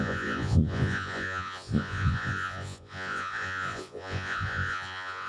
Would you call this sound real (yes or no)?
no